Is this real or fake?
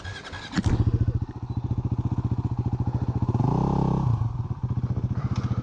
real